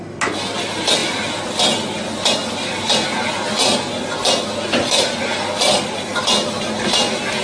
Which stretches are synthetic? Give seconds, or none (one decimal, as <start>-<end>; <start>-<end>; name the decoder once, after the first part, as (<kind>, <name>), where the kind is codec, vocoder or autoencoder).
none

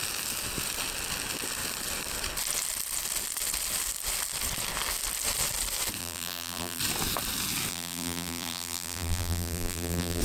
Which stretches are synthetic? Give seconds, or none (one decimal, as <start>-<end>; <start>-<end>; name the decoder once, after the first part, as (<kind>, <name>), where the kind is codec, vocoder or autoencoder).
6.0-6.8 (vocoder, BigVGAN v2); 7.7-10.2

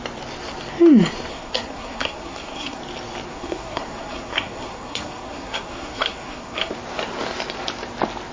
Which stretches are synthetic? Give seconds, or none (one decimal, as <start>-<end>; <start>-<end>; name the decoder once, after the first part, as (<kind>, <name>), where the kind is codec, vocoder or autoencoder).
1.3-2.8 (codec, SNAC); 3.3-6.7

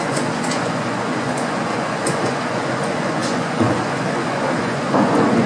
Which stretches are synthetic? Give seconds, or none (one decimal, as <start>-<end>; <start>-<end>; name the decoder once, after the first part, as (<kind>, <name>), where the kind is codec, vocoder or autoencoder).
0.0-5.5 (vocoder, Vocos)

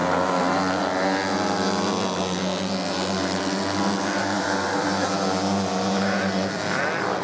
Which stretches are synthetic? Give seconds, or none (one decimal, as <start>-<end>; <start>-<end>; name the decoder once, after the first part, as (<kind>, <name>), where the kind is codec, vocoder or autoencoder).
4.2-4.9 (vocoder, BigVGAN v2)

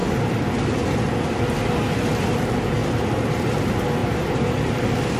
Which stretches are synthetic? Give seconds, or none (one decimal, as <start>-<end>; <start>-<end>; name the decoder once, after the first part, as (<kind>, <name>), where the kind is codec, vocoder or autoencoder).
4.0-4.8 (vocoder, BigVGAN v2)

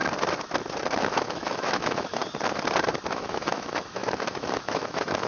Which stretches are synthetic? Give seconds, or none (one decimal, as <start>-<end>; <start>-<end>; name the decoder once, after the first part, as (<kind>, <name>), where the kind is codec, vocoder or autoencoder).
1.0-2.2 (autoencoder, DAC-VAE); 3.1-5.3